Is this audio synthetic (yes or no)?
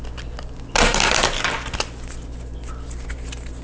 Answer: no